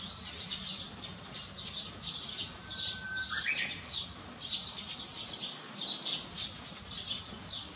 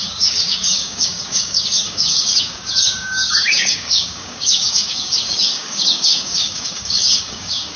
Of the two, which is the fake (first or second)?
second